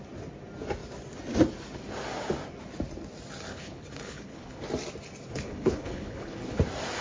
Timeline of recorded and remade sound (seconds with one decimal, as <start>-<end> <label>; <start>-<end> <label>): 0.0-3.5 recorded; 3.5-4.6 remade; 4.6-5.3 recorded; 5.3-6.6 remade; 6.6-7.0 recorded